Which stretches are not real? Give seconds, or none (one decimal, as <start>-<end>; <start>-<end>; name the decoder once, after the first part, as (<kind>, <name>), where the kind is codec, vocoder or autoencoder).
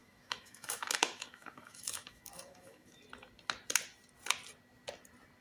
0.0-3.0 (autoencoder, DAC-VAE)